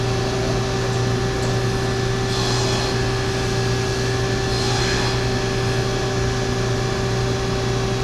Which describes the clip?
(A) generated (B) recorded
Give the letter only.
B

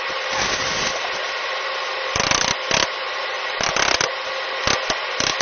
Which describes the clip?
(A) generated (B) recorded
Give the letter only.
B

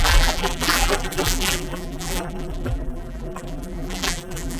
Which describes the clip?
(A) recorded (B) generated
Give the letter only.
B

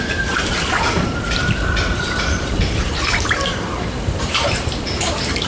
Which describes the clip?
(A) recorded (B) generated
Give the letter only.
B